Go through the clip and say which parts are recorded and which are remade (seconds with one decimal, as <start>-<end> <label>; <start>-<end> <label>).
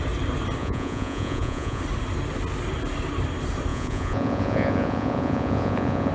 0.0-0.6 recorded; 0.6-1.8 remade; 1.8-3.7 recorded; 3.7-6.1 remade